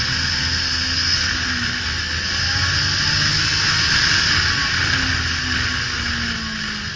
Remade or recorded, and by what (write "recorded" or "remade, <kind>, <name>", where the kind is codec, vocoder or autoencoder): recorded